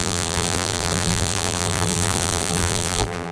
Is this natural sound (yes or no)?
no